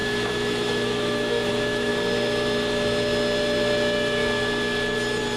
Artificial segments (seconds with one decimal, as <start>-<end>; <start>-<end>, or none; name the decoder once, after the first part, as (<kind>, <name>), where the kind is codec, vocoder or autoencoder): 0.0-1.9 (autoencoder, DAC-VAE)